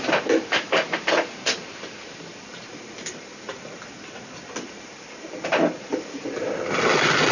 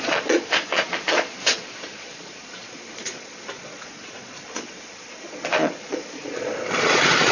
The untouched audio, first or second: first